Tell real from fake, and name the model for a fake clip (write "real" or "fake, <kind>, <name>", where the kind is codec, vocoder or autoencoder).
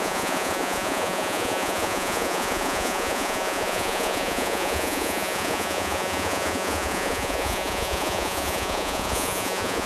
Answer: fake, vocoder, Vocos